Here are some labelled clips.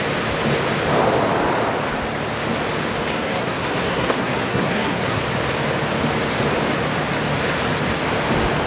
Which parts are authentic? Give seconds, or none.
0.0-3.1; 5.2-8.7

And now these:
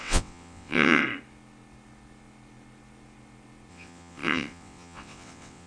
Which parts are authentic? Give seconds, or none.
1.0-3.7